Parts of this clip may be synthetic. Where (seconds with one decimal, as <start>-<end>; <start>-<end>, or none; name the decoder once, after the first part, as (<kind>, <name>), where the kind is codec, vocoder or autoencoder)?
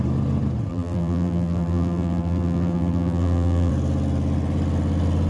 0.7-3.7 (vocoder, BigVGAN v2)